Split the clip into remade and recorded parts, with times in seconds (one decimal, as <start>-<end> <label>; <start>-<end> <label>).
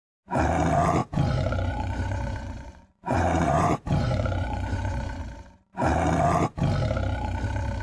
0.0-1.0 recorded; 1.0-5.2 remade; 5.2-7.8 recorded